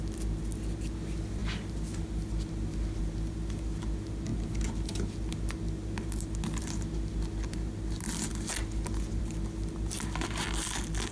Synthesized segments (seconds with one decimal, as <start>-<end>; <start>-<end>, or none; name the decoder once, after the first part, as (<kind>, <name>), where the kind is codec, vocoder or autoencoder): none